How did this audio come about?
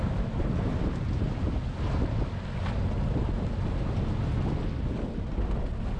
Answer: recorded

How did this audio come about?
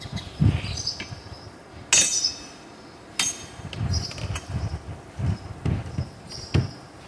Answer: recorded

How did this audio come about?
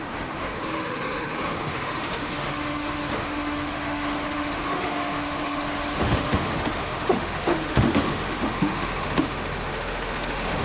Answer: remade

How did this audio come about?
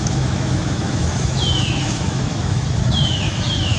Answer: remade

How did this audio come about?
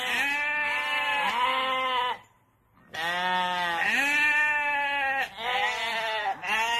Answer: recorded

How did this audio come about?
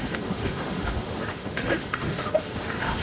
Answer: remade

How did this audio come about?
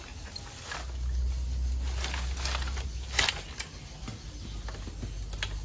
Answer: recorded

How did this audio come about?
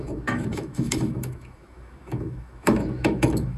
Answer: remade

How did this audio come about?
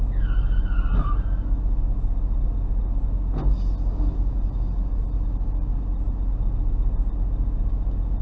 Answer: recorded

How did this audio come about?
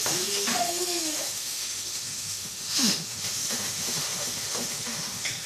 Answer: remade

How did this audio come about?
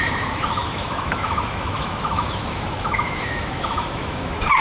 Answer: remade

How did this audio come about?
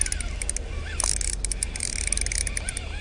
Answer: recorded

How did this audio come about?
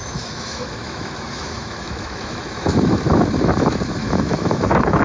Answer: remade